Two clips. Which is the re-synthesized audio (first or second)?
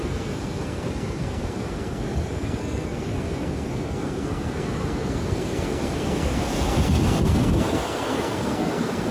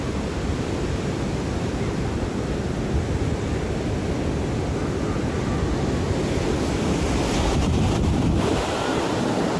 first